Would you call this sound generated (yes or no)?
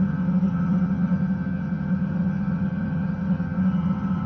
yes